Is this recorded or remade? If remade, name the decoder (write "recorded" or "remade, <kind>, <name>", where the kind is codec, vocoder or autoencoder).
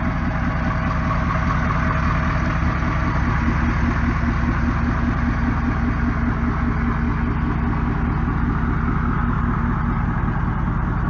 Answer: recorded